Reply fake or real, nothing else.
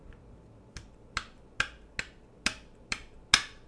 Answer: real